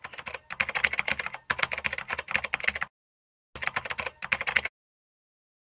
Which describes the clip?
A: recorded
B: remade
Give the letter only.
A